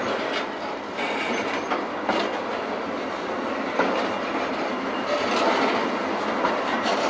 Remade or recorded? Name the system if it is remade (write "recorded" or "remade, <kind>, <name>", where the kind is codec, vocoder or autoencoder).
recorded